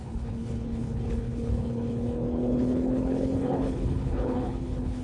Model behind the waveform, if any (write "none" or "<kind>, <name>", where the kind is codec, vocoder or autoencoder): codec, HILCodec